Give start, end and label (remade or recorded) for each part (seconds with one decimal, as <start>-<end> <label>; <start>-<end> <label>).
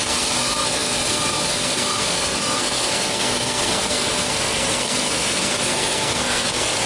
0.0-6.9 remade